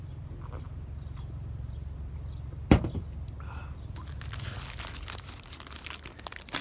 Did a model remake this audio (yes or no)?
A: no